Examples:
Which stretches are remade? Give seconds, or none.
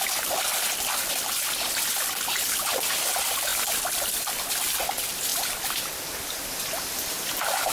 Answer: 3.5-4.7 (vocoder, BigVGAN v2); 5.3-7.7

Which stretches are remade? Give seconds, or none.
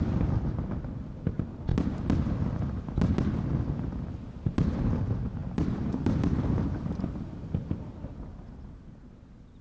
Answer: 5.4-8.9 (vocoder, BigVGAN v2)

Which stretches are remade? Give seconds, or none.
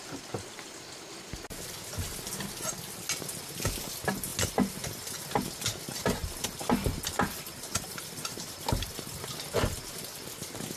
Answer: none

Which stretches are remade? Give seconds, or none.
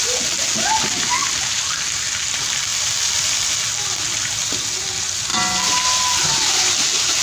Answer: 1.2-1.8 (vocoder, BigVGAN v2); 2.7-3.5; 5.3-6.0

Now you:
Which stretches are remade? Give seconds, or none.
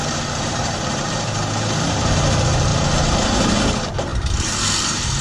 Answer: 0.0-2.1 (vocoder, BigVGAN v2); 2.7-3.6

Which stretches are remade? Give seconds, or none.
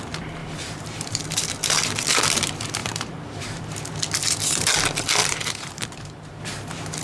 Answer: 0.4-1.2 (vocoder, BigVGAN v2); 2.8-3.7; 5.2-6.4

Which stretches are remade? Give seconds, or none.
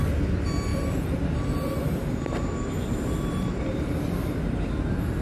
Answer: 0.7-3.8 (vocoder, BigVGAN v2)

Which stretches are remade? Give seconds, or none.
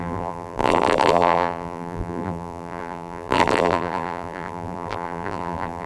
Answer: 0.0-5.9 (vocoder, BigVGAN v2)